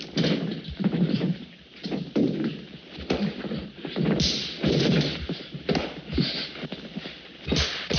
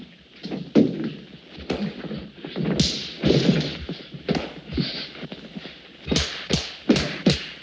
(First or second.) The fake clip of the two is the first